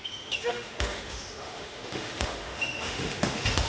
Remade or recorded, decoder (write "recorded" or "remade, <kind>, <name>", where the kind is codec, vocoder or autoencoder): remade, autoencoder, DAC-VAE